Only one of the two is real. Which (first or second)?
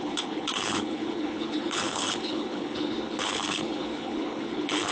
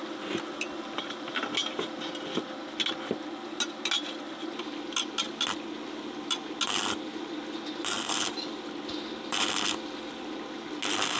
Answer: second